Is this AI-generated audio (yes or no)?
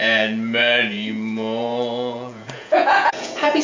yes